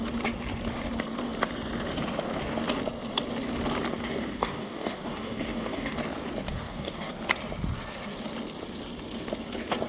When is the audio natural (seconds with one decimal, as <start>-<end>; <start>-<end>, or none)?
0.0-3.9; 6.0-6.5; 7.1-9.9